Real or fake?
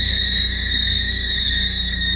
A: fake